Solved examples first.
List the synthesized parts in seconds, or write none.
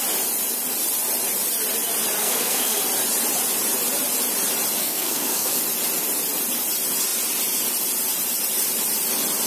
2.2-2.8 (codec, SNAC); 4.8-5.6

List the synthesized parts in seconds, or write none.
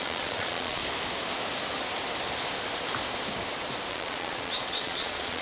0.0-0.8 (vocoder, Vocos); 3.9-5.4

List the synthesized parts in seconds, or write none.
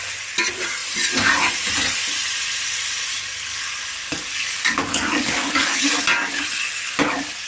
3.1-3.6 (codec, DAC); 4.0-5.9